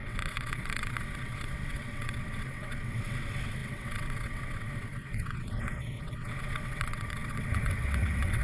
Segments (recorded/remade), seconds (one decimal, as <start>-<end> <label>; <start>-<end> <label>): 0.0-8.4 remade

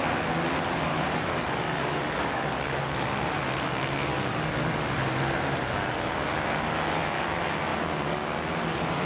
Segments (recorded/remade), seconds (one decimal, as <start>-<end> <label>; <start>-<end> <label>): 0.0-0.9 recorded; 0.9-2.9 remade; 2.9-9.1 recorded

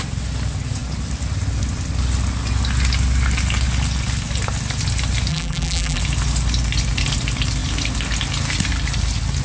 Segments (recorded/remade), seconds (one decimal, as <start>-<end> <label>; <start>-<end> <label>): 0.0-5.3 recorded; 5.3-6.0 remade; 6.0-9.4 recorded

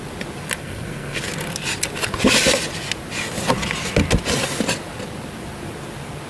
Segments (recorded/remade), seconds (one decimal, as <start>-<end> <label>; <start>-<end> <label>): 0.0-0.6 recorded; 0.6-1.2 remade; 1.2-6.3 recorded

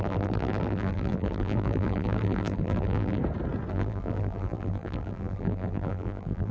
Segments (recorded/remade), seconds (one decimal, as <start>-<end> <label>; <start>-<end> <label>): 0.0-3.2 remade; 3.2-3.7 recorded; 3.7-6.5 remade

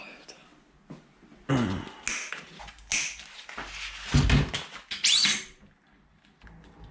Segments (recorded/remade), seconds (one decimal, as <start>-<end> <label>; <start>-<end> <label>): 0.0-6.9 recorded